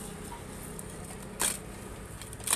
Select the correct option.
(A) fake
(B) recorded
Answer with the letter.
B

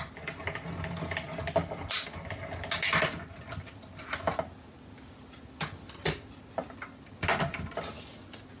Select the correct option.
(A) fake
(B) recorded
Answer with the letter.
B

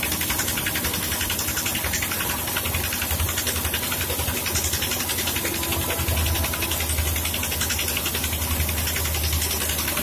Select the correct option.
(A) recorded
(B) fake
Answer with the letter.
A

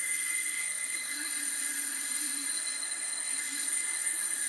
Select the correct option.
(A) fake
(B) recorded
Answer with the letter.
A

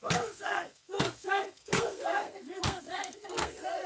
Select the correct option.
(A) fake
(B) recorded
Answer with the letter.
A